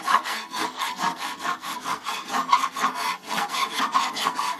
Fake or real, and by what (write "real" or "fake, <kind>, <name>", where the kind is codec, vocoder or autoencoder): fake, codec, SNAC